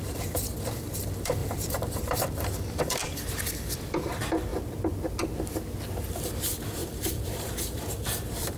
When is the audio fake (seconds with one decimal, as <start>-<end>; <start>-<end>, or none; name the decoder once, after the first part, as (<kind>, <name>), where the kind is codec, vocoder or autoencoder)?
0.0-4.5 (vocoder, BigVGAN v2); 6.1-8.6